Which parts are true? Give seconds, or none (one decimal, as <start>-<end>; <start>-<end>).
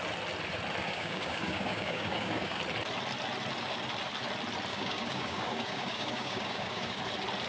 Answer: 0.0-0.8; 2.6-4.7; 7.0-7.5